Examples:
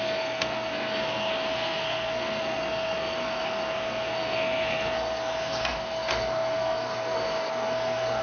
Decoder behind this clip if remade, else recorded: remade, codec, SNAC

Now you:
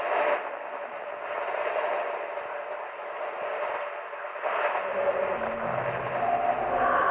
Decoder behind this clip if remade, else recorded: recorded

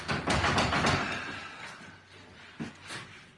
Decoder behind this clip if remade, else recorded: recorded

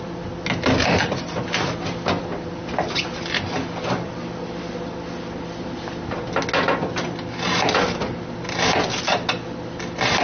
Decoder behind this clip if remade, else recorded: recorded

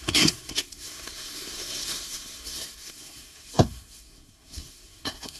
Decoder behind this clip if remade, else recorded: remade, codec, SNAC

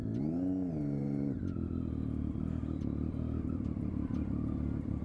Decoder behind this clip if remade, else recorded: recorded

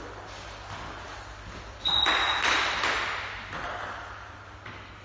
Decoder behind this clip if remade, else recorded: recorded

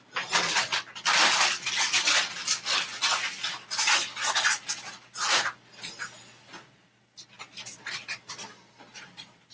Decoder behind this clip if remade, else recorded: recorded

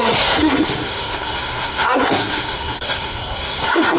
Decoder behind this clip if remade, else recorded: remade, codec, SNAC